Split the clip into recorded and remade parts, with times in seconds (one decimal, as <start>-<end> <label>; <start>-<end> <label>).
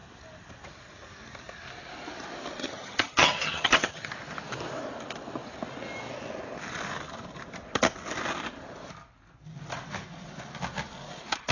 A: 0.0-2.6 recorded; 2.6-4.1 remade; 4.1-11.5 recorded